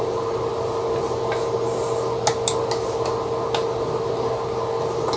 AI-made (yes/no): no